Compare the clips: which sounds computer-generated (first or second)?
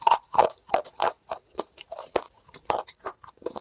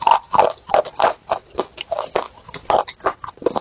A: first